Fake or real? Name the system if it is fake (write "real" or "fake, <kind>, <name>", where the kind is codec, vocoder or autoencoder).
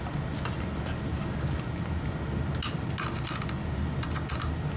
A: real